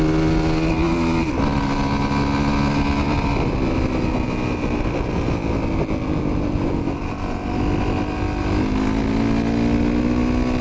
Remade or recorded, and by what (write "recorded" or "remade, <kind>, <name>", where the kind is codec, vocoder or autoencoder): recorded